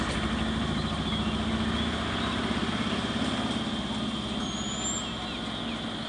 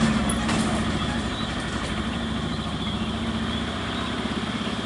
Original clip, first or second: first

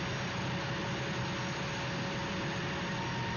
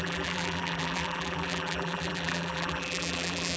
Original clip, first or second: first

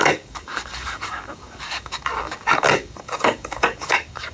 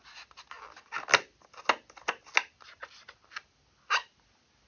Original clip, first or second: second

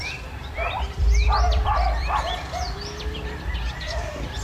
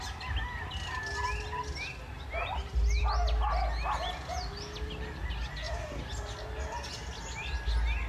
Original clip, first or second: second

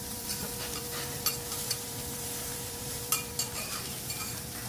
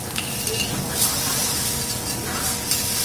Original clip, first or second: second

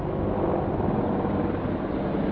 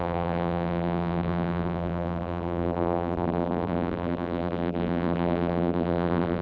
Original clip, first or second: first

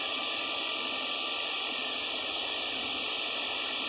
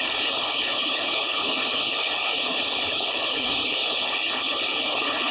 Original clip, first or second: first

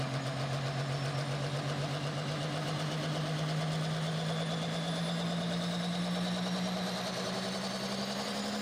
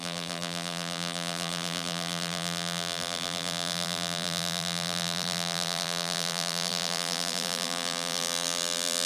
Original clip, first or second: first